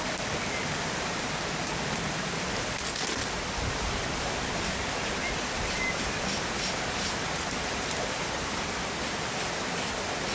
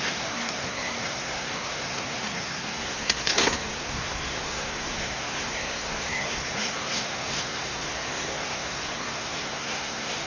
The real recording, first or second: first